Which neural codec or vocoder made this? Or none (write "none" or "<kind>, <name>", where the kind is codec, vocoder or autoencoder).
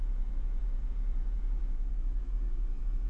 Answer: vocoder, Vocos